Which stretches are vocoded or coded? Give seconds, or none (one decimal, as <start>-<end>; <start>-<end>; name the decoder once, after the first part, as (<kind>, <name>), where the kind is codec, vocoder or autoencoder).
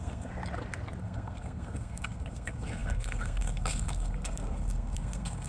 0.0-0.4 (codec, SNAC); 1.0-5.5